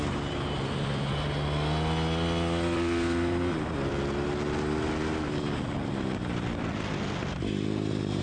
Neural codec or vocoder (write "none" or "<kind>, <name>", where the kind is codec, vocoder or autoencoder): none